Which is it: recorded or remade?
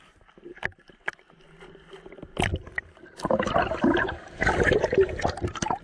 recorded